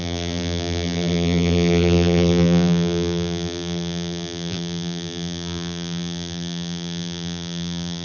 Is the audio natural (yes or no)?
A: no